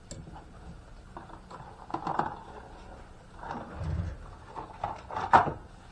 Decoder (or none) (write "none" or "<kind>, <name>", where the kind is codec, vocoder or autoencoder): none